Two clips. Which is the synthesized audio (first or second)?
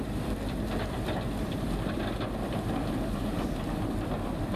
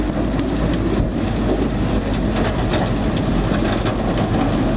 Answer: first